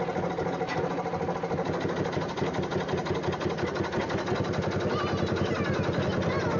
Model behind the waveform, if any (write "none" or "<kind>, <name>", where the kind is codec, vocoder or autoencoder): none